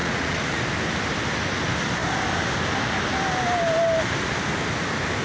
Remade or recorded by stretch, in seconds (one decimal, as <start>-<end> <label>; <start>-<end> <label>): 0.0-0.6 remade; 0.6-5.2 recorded